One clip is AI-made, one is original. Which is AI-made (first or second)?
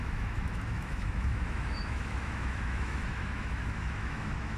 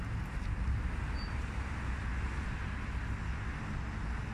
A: first